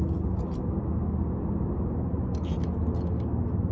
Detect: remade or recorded recorded